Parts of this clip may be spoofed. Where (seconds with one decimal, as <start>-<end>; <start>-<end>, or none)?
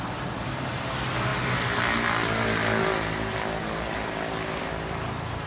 none